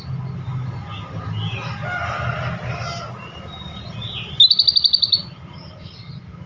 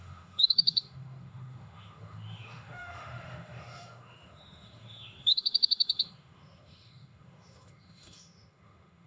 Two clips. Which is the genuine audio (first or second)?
first